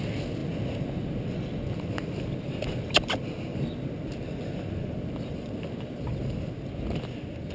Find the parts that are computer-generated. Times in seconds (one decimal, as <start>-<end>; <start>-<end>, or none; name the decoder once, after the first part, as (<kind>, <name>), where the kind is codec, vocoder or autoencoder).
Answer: none